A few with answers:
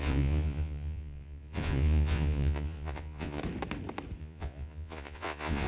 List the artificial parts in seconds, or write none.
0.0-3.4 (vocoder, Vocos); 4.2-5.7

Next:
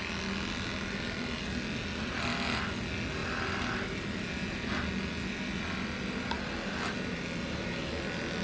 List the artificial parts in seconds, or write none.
none

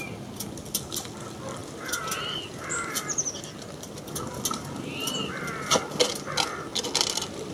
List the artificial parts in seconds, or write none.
none